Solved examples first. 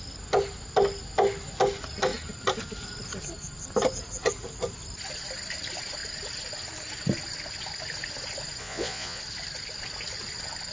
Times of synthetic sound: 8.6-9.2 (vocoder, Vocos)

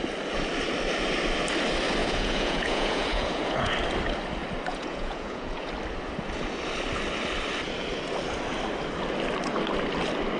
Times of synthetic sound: 2.0-3.7 (vocoder, Vocos); 4.7-5.7

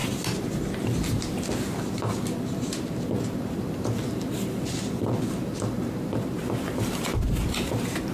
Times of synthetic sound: none